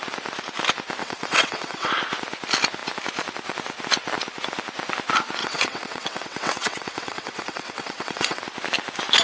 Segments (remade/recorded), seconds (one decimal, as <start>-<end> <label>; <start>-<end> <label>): 0.0-1.0 recorded; 1.0-1.9 remade; 1.9-5.4 recorded; 5.4-8.4 remade; 8.4-9.2 recorded